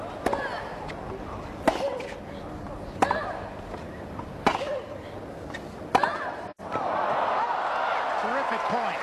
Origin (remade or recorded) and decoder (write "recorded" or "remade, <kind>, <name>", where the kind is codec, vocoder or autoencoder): recorded